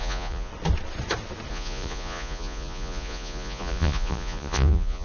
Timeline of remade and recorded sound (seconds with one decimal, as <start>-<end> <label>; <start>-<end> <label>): 0.0-0.5 remade; 0.5-1.5 recorded; 1.5-5.0 remade